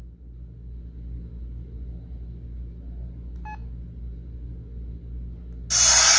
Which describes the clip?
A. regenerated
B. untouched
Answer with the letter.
B